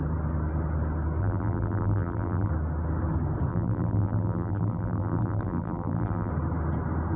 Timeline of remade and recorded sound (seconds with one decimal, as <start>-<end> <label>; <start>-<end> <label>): 0.0-1.2 recorded; 1.2-2.5 remade; 2.5-3.5 recorded; 3.5-6.3 remade; 6.3-7.2 recorded